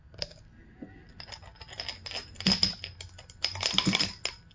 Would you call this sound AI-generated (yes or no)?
no